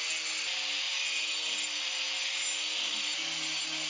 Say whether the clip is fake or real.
real